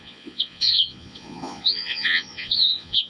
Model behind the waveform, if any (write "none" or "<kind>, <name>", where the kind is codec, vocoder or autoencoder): vocoder, Vocos